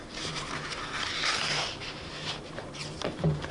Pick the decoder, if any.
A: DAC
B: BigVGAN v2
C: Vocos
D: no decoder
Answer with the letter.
B